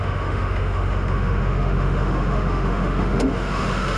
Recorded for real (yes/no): no